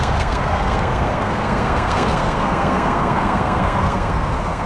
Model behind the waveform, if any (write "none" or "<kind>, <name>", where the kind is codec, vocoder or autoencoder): codec, SNAC